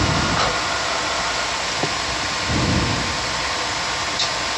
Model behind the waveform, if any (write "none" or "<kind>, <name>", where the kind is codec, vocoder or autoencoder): none